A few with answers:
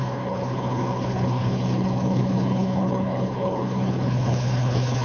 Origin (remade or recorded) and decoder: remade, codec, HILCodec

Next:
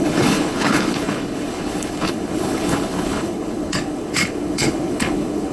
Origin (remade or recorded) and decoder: remade, codec, HILCodec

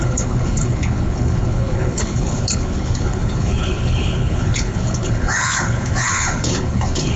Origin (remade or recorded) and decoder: remade, codec, HILCodec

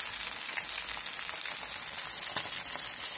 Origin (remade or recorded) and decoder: recorded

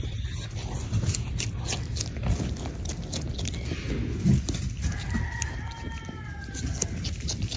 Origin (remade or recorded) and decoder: recorded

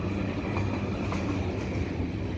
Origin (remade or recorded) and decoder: recorded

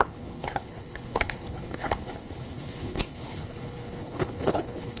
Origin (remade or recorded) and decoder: remade, codec, HILCodec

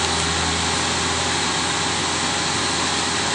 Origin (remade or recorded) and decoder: recorded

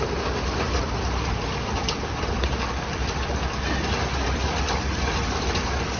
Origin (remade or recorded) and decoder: recorded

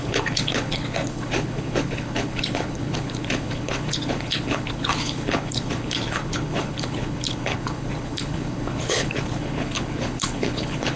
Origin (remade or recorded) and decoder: remade, codec, HILCodec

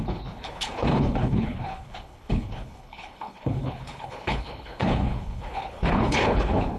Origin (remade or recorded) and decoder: remade, codec, HILCodec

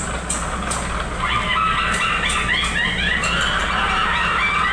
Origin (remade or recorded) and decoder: recorded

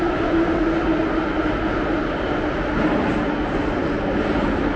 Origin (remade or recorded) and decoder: recorded